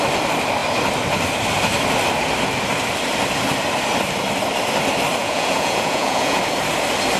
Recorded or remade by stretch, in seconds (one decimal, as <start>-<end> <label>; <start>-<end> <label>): 0.0-5.2 recorded; 5.2-6.4 remade; 6.4-7.2 recorded

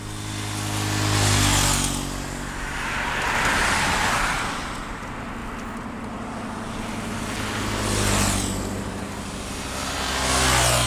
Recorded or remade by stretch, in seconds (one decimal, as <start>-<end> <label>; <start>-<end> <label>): 0.0-5.4 recorded; 5.4-6.3 remade; 6.3-10.9 recorded

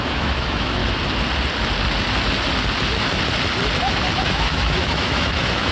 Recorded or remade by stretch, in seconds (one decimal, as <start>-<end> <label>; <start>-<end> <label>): 0.0-0.8 remade; 0.8-4.2 recorded; 4.2-5.7 remade

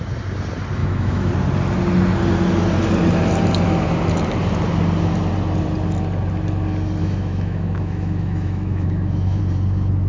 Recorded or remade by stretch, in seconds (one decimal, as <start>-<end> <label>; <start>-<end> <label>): 0.0-0.8 recorded; 0.8-1.3 remade; 1.3-7.0 recorded; 7.0-9.4 remade; 9.4-10.1 recorded